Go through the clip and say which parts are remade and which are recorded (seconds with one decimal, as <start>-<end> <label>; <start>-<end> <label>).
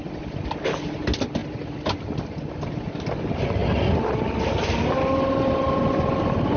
0.0-6.6 recorded